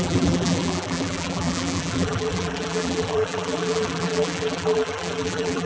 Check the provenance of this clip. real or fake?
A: fake